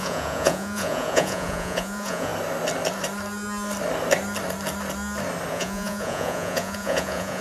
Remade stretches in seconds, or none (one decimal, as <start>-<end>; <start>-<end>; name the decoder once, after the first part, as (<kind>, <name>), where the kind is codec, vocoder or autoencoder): 0.0-2.3 (vocoder, Vocos); 5.5-7.4